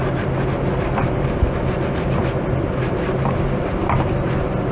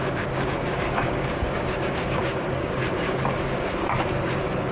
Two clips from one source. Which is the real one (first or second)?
first